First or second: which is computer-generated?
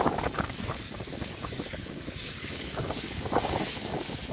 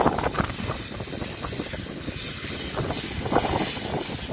first